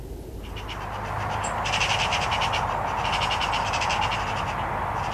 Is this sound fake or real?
real